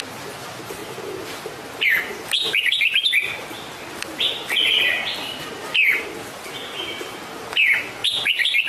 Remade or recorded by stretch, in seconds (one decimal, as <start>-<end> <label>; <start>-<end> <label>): 0.0-8.7 recorded